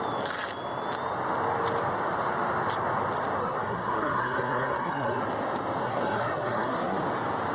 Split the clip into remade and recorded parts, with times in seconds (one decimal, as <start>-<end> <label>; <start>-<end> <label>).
0.0-3.4 recorded; 3.4-5.2 remade; 5.2-5.8 recorded; 5.8-7.0 remade; 7.0-7.5 recorded